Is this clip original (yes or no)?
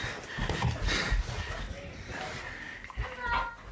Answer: yes